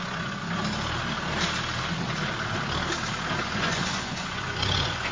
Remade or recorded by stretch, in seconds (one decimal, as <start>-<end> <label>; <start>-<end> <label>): 0.0-0.4 remade; 0.4-3.4 recorded; 3.4-5.1 remade